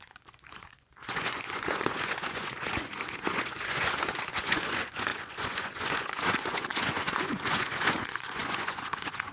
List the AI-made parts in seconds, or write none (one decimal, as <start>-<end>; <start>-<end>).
0.0-9.3

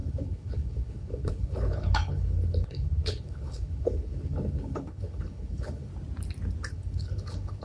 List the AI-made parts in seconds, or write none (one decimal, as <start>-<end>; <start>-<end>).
0.0-5.9; 6.7-7.6

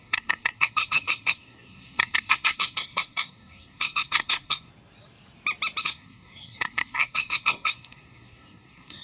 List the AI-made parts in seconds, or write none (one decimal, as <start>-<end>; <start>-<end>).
0.0-4.7; 5.8-9.0

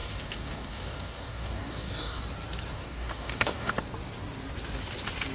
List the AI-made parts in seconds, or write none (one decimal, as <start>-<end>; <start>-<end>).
0.0-2.2; 2.7-3.7

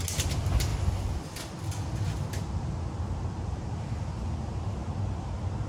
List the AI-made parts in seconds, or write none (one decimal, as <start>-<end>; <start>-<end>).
none

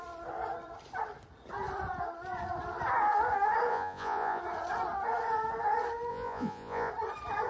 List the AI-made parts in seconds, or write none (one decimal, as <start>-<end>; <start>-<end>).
3.7-4.4; 6.1-6.9

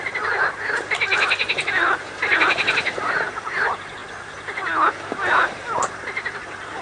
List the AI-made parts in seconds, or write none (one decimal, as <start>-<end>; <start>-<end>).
none

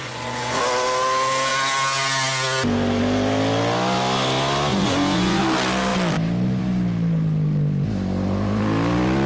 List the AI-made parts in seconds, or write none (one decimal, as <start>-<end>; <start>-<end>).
0.0-0.6; 4.7-5.4